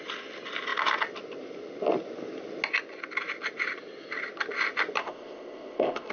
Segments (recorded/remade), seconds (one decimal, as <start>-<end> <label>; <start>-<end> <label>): 0.0-5.0 recorded; 5.0-6.1 remade

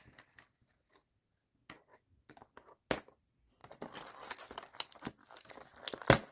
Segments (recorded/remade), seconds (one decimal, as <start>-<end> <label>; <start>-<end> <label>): 0.0-3.6 recorded; 3.6-4.1 remade; 4.1-6.3 recorded

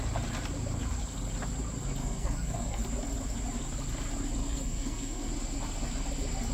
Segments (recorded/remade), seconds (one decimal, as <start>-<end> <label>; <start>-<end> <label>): 0.0-2.0 recorded; 2.0-2.8 remade; 2.8-4.4 recorded; 4.4-5.3 remade; 5.3-6.5 recorded

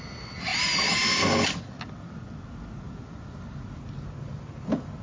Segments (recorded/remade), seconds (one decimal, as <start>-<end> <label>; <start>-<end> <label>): 0.0-5.0 recorded

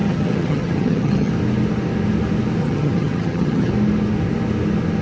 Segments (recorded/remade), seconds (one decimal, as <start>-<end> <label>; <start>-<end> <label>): 0.0-1.3 remade; 1.3-2.6 recorded; 2.6-3.7 remade; 3.7-5.0 recorded

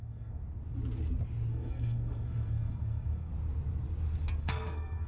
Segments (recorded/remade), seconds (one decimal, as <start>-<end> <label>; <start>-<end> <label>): 0.0-0.4 remade; 0.4-1.5 recorded; 1.5-3.3 remade; 3.3-4.4 recorded; 4.4-5.1 remade

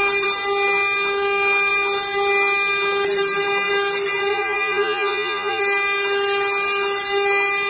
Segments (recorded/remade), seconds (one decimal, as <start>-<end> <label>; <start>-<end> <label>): 0.0-4.3 recorded; 4.3-5.6 remade; 5.6-7.7 recorded

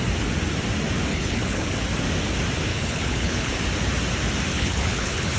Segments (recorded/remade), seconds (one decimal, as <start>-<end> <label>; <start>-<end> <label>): 0.0-1.1 recorded; 1.1-1.7 remade; 1.7-2.7 recorded; 2.7-3.5 remade; 3.5-4.5 recorded; 4.5-5.4 remade